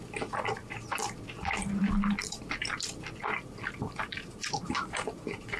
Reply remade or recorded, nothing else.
recorded